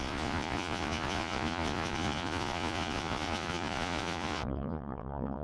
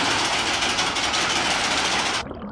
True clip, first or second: second